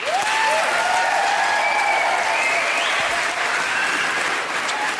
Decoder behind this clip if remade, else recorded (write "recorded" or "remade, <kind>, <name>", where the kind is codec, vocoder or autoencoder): recorded